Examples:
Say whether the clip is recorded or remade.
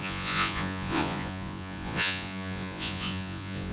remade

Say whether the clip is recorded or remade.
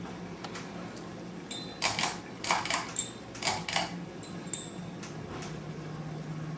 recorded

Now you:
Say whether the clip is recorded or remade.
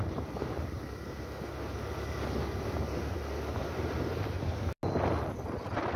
recorded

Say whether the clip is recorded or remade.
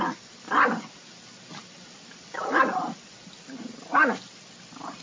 recorded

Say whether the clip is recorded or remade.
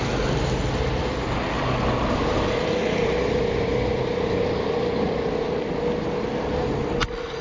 recorded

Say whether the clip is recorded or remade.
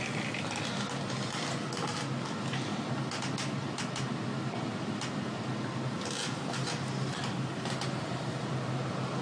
recorded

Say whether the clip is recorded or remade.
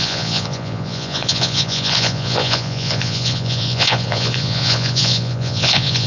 remade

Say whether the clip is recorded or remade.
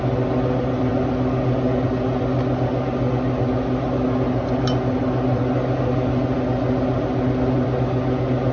recorded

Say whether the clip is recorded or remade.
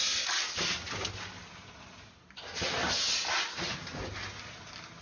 recorded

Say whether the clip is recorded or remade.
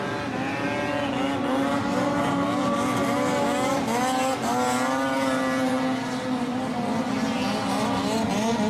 recorded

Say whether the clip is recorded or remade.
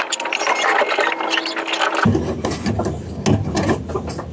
recorded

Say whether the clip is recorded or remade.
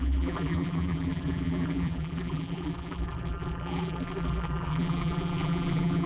remade